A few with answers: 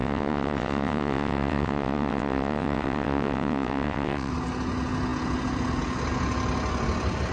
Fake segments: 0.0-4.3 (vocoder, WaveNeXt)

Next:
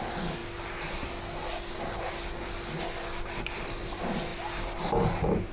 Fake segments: none

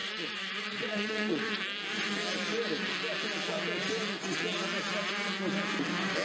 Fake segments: 0.0-1.4 (vocoder, WaveNeXt)

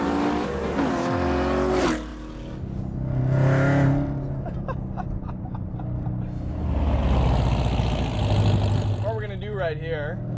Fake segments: none

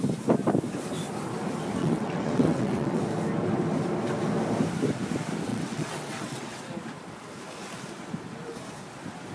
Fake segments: 1.8-3.0 (vocoder, WaveNeXt); 5.5-6.6

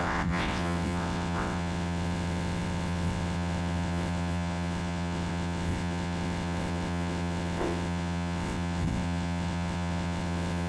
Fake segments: 0.0-10.7 (vocoder, WaveNeXt)

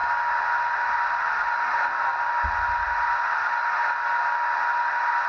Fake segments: none